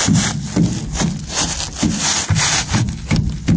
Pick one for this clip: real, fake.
real